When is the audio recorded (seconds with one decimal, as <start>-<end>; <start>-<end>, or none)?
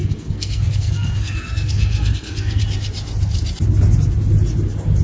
2.6-5.0